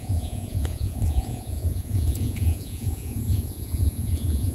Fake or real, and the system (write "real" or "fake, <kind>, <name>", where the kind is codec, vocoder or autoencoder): fake, vocoder, Vocos